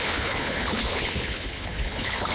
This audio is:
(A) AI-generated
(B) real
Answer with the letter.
A